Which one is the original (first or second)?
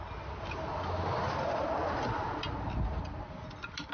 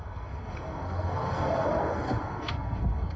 first